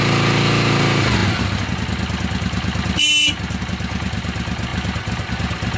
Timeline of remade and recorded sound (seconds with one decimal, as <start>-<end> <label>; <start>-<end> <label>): 0.0-5.8 recorded

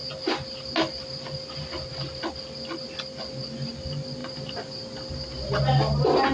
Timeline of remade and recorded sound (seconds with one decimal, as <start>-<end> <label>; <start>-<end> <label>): 0.0-1.9 recorded; 1.9-3.2 remade; 3.2-6.3 recorded

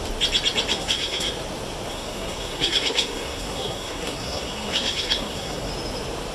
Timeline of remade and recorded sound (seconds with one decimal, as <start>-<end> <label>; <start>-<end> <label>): 0.0-0.7 recorded; 0.7-1.3 remade; 1.3-1.9 recorded; 1.9-5.7 remade; 5.7-6.3 recorded

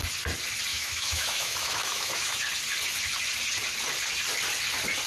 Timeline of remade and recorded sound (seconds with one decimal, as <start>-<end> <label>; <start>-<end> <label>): 0.0-0.7 recorded; 0.7-2.4 remade; 2.4-5.1 recorded

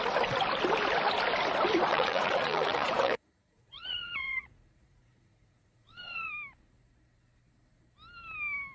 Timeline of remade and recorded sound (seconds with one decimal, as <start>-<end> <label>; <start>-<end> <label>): 0.0-1.9 recorded; 1.9-6.3 remade; 6.3-8.7 recorded

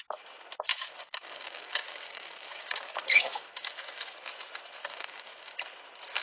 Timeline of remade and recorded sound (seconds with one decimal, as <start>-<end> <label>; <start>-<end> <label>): 0.0-0.7 recorded; 0.7-4.1 remade; 4.1-4.8 recorded; 4.8-5.6 remade; 5.6-6.2 recorded